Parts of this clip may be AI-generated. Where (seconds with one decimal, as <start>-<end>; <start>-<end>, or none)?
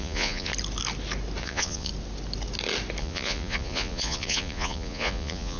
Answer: 0.0-0.5; 1.4-1.9; 3.0-5.6